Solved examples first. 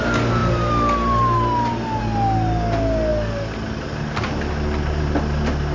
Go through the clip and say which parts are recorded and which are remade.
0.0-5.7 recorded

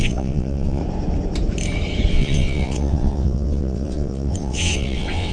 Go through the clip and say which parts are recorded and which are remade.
0.0-0.8 remade; 0.8-2.1 recorded; 2.1-5.3 remade